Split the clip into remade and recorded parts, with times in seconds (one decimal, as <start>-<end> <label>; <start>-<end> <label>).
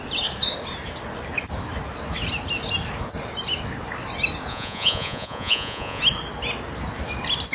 0.0-4.5 recorded; 4.5-6.0 remade; 6.0-7.5 recorded